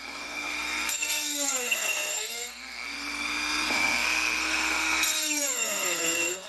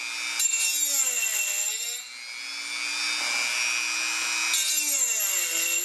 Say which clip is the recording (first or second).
second